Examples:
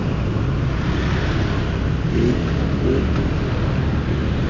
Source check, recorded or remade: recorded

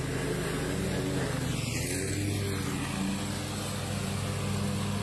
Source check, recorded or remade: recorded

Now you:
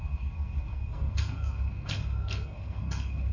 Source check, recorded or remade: remade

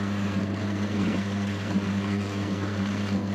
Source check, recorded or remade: remade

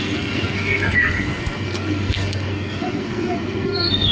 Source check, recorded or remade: remade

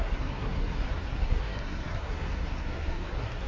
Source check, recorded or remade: remade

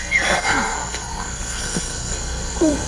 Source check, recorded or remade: remade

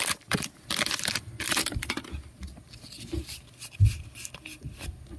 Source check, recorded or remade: recorded